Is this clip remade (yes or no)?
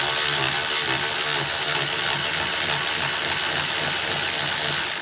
no